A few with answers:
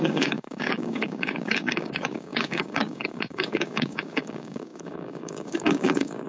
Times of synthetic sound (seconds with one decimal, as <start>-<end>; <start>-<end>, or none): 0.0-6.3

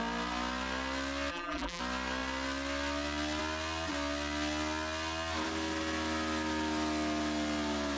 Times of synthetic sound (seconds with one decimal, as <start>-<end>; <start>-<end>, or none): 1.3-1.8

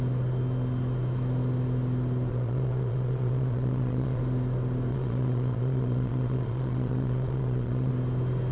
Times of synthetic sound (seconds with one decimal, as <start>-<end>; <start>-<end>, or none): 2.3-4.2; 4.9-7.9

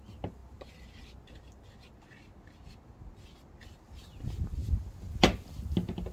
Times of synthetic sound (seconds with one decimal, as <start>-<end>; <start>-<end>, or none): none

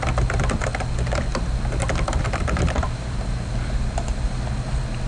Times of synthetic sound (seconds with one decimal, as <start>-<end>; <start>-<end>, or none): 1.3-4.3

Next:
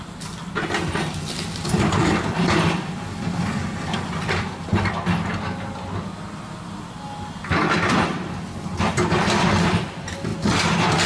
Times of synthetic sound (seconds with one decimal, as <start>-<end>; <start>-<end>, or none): none

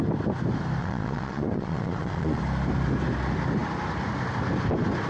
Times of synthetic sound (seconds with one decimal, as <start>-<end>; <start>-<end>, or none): 0.8-2.4

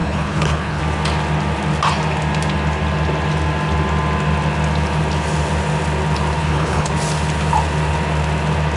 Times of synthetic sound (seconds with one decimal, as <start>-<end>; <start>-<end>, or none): 0.0-0.8; 6.4-6.9